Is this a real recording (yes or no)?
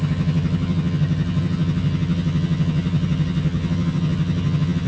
no